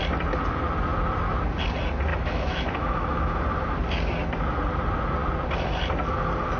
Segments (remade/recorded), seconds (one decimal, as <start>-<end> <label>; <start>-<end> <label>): 0.0-2.1 recorded; 2.1-3.4 remade; 3.4-6.6 recorded